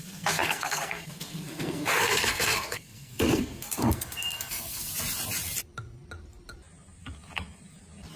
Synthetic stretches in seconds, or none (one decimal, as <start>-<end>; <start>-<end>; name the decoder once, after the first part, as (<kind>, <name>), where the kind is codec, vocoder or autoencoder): 0.0-4.9 (codec, SNAC)